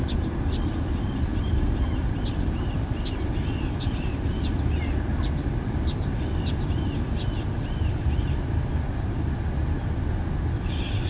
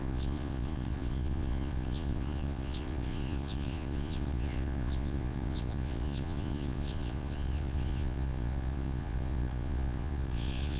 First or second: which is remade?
second